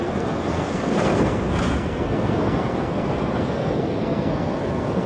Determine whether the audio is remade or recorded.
remade